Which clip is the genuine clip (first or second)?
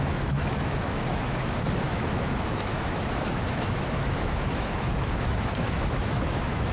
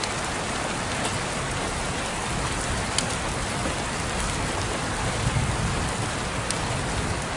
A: second